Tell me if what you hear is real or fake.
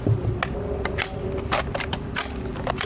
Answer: real